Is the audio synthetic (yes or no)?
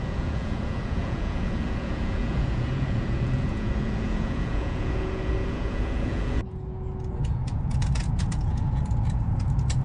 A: yes